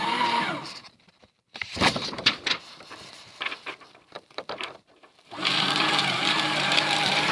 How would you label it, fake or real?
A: fake